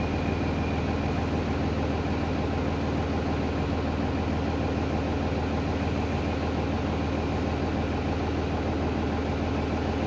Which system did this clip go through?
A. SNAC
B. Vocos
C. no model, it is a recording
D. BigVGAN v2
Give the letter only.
C